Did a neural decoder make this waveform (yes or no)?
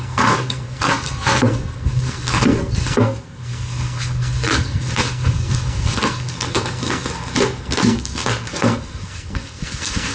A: yes